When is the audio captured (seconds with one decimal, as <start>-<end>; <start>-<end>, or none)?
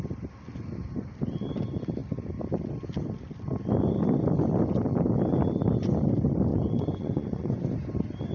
0.0-6.5; 7.6-8.3